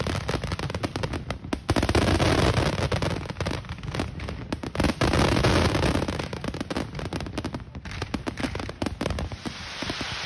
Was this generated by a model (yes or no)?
no